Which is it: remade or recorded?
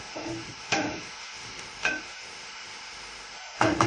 remade